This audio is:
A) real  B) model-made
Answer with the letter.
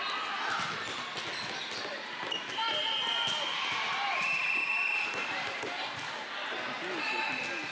A